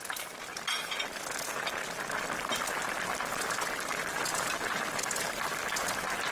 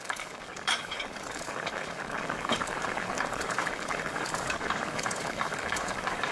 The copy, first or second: second